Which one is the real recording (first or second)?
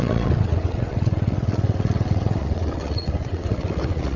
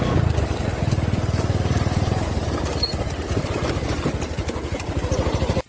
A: second